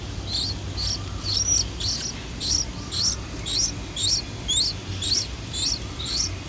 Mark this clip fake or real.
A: real